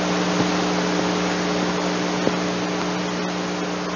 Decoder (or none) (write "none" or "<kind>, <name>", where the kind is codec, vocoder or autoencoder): none